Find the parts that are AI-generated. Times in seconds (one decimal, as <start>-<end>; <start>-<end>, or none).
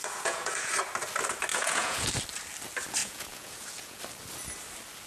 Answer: 0.0-0.7; 1.5-2.1; 3.0-4.0